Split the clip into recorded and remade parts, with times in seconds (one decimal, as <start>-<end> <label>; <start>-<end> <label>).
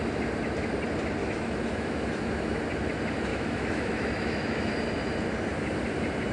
0.0-1.2 recorded; 1.2-2.6 remade; 2.6-3.3 recorded; 3.3-4.7 remade; 4.7-6.3 recorded